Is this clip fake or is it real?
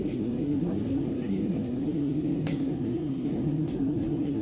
fake